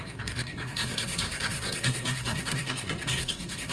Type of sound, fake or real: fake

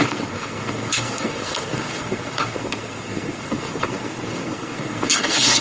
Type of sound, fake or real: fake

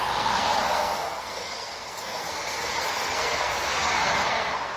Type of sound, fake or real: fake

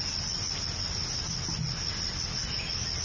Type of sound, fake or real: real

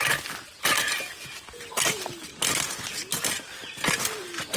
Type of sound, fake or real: real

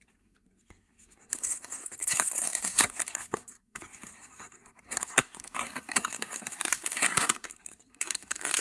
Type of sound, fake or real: fake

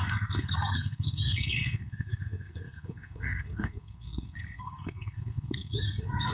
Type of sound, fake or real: fake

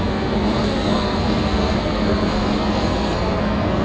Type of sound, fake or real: fake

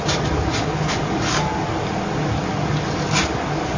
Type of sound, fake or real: real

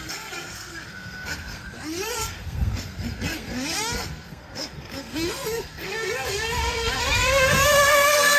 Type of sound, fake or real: fake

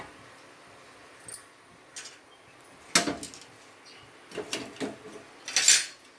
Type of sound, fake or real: real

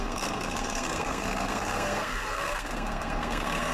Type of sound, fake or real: fake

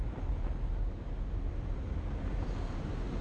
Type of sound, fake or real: real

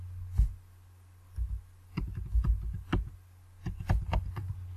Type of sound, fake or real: real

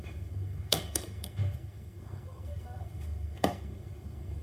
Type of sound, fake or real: fake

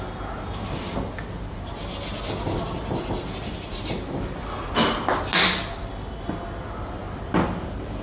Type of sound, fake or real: real